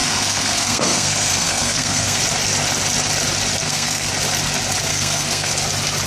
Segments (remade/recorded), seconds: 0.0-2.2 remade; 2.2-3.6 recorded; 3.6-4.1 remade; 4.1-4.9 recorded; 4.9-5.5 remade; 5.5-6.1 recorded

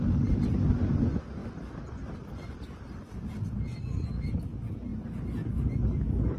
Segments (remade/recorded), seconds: 0.0-1.4 recorded; 1.4-4.4 remade; 4.4-6.4 recorded

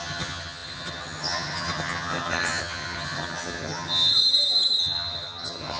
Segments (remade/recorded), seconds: 0.0-4.1 remade; 4.1-4.8 recorded; 4.8-5.8 remade

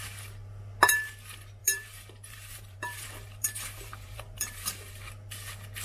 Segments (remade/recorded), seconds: 0.0-1.6 recorded; 1.6-5.1 remade; 5.1-5.8 recorded